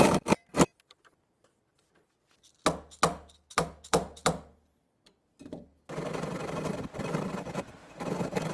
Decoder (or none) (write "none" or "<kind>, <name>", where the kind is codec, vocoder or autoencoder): none